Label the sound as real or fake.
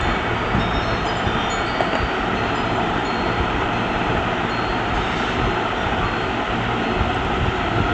real